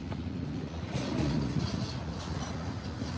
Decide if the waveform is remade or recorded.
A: remade